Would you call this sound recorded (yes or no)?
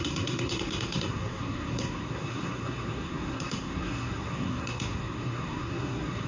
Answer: no